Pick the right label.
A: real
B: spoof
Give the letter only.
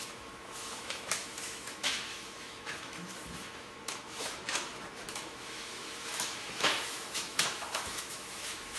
B